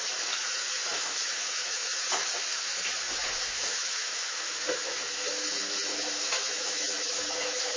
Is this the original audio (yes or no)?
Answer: no